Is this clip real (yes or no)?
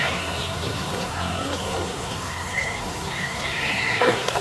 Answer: no